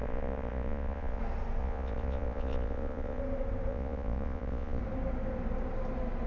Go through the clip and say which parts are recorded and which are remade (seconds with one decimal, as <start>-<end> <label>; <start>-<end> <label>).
0.0-1.2 remade; 1.2-1.6 recorded; 1.6-3.2 remade; 3.2-3.7 recorded; 3.7-4.8 remade; 4.8-6.3 recorded